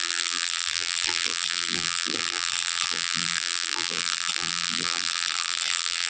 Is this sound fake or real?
fake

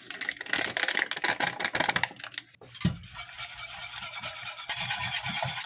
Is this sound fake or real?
real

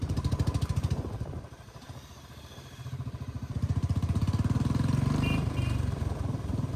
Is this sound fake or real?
fake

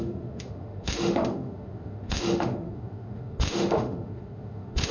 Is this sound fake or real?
fake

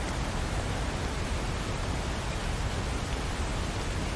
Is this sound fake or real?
real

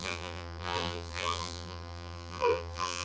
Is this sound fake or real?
fake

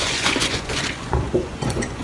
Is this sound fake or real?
fake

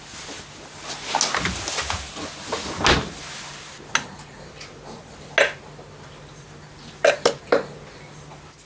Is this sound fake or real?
real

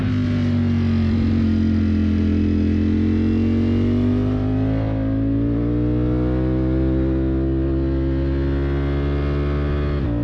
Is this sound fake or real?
real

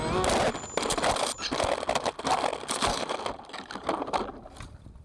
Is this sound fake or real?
real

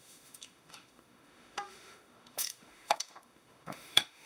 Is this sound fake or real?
fake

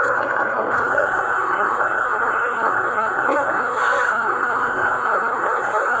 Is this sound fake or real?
fake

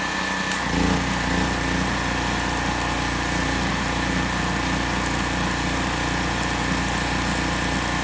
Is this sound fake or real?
real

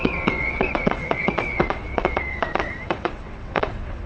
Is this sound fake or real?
fake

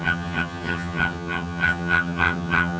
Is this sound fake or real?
fake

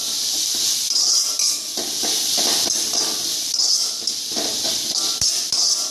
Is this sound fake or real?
real